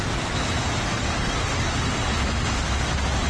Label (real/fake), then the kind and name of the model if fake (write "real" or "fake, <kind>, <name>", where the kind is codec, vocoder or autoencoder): real